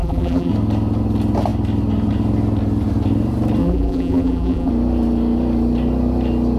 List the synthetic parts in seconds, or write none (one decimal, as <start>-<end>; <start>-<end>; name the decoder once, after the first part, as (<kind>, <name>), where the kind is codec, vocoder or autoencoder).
0.0-0.5 (vocoder, BigVGAN v2); 3.6-4.7